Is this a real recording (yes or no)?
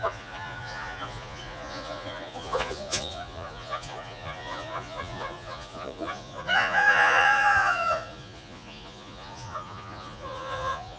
no